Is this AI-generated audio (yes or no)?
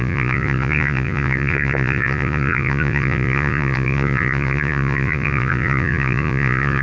yes